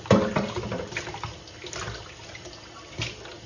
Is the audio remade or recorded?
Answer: recorded